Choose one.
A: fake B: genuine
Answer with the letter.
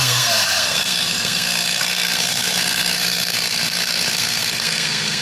A